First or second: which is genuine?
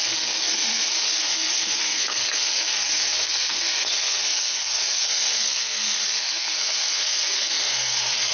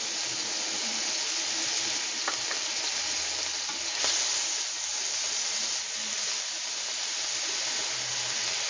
second